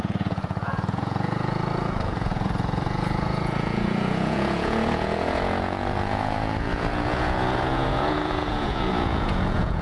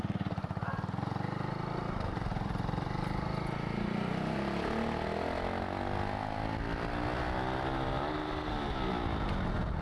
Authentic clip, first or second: second